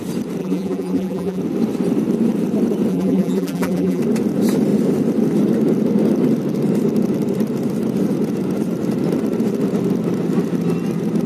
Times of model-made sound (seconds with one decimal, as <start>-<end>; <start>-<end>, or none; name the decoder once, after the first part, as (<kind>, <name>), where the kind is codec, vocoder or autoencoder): 0.4-1.4 (vocoder, BigVGAN v2); 2.9-4.0